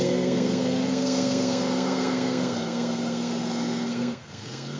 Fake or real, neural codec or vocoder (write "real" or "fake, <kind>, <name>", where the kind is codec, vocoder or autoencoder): fake, codec, SNAC